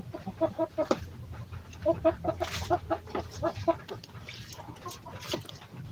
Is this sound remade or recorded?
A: remade